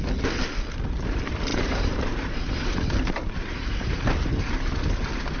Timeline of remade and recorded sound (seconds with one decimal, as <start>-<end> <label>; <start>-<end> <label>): 0.0-1.5 recorded; 1.5-4.5 remade; 4.5-5.4 recorded